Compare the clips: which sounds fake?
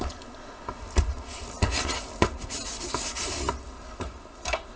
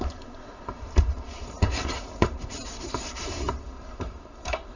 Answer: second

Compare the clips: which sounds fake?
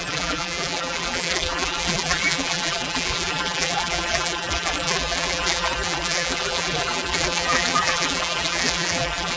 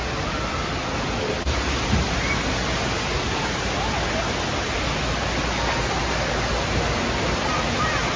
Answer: first